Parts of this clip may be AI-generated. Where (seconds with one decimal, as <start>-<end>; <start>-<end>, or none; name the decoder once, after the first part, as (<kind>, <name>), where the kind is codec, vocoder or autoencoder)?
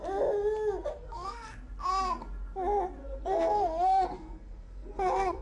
0.9-1.5 (codec, SNAC); 3.0-5.4